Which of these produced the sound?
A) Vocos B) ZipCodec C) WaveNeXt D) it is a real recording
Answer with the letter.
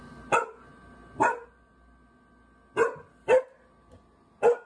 D